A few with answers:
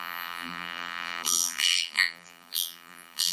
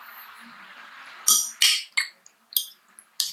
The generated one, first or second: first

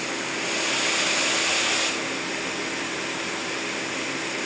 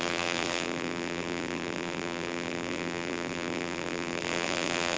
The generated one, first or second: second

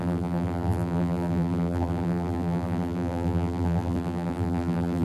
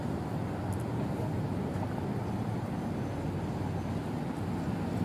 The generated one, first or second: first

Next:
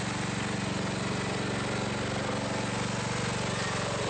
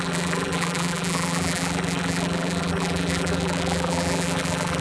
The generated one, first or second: second